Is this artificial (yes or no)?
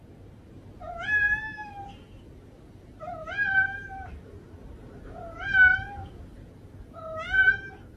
no